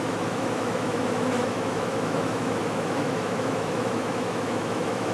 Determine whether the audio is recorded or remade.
remade